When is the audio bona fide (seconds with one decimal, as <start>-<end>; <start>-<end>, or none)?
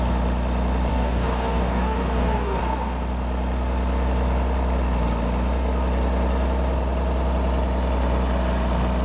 0.0-0.9; 2.6-9.0